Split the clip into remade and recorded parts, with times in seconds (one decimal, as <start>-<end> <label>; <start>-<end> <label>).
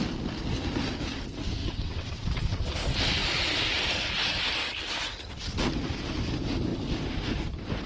0.0-1.6 recorded; 1.6-2.6 remade; 2.6-7.9 recorded